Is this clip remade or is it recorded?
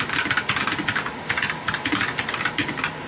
recorded